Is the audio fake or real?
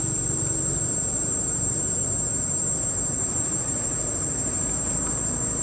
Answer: real